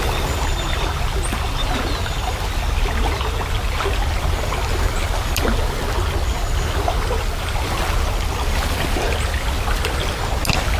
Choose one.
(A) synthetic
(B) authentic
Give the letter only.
B